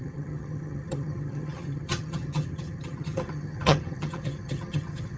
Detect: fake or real fake